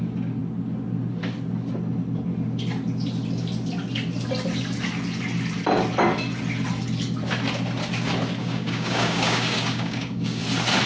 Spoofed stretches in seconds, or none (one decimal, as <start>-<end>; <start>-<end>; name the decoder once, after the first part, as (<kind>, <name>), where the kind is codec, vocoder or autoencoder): 8.4-10.4 (codec, DAC)